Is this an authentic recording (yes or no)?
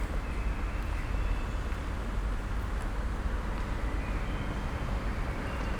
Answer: yes